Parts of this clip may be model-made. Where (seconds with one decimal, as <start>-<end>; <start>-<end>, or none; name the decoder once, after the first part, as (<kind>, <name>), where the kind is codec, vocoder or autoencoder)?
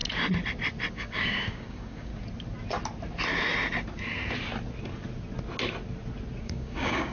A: 0.9-2.1 (codec, DAC); 6.4-7.1